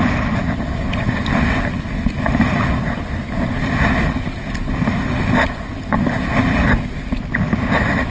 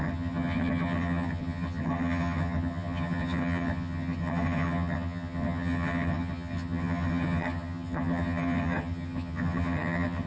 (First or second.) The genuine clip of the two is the first